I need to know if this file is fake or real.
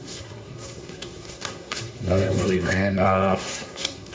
fake